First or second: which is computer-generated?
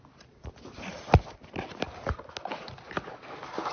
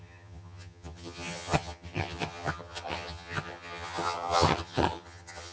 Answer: second